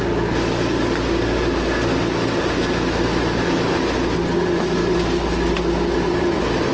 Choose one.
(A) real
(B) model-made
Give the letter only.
A